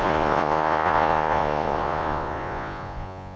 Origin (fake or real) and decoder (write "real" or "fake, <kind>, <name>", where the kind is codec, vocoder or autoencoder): fake, vocoder, Vocos